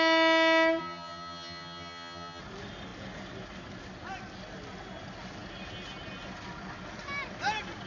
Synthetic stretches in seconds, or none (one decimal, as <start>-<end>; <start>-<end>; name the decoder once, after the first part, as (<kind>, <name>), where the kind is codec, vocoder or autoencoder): 0.8-2.4 (vocoder, HiFi-GAN)